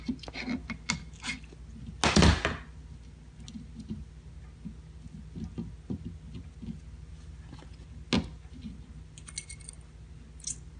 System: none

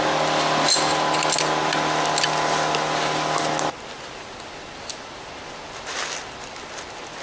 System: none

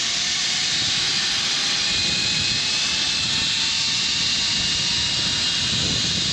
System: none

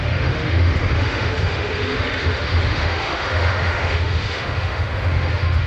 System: autoencoder, DAC-VAE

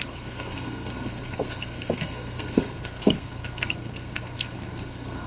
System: codec, SNAC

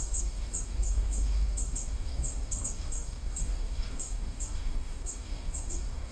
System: codec, DAC